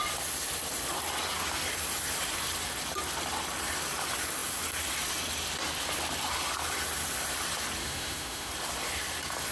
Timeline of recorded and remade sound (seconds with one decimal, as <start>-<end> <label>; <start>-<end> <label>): 0.0-7.8 recorded; 7.8-8.5 remade; 8.5-9.5 recorded